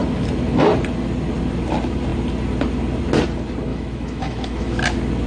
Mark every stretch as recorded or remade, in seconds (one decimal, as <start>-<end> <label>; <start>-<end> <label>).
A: 0.0-3.7 recorded; 3.7-4.7 remade; 4.7-5.3 recorded

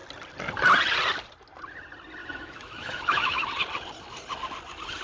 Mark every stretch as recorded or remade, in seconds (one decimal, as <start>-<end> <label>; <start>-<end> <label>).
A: 0.0-2.2 recorded; 2.2-3.5 remade; 3.5-5.0 recorded

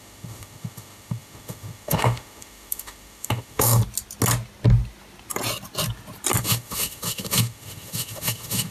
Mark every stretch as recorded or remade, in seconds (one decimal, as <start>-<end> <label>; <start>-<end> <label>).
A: 0.0-3.8 remade; 3.8-6.4 recorded; 6.4-8.7 remade

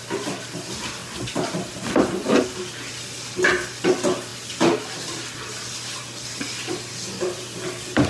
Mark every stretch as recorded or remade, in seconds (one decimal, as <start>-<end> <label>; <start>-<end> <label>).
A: 0.0-8.1 recorded

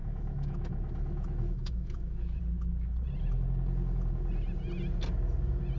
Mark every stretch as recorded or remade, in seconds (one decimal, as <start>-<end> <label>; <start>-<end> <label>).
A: 0.0-2.4 remade; 2.4-5.8 recorded